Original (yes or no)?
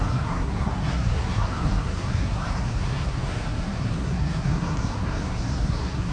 no